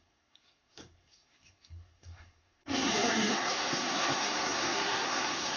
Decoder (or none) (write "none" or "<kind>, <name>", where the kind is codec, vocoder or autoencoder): codec, SNAC